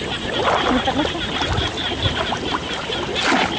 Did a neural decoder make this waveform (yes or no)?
no